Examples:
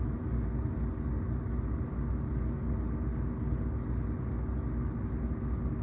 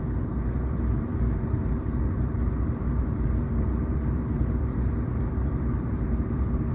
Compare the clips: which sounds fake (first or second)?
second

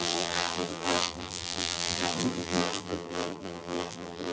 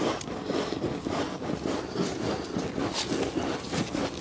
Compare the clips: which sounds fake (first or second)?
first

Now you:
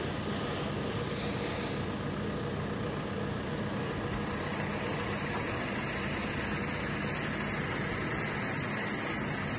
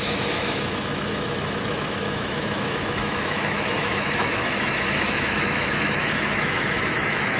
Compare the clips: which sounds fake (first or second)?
second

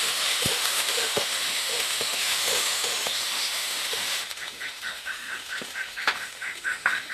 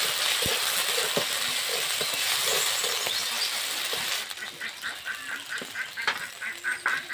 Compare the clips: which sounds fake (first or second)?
first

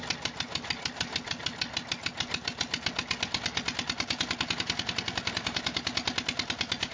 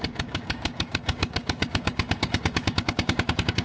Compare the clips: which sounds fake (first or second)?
second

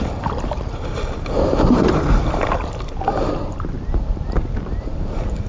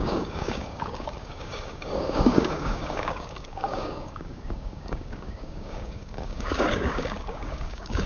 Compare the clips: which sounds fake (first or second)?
second